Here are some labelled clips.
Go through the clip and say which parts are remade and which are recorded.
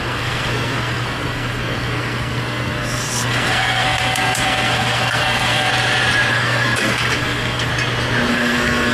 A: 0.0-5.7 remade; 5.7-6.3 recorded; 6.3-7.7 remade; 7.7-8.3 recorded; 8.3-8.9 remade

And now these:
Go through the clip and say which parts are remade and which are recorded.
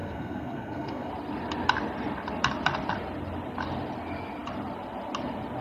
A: 0.0-1.1 remade; 1.1-5.6 recorded